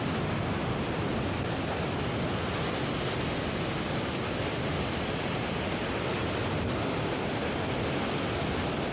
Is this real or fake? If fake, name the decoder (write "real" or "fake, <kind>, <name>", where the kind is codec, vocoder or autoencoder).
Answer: real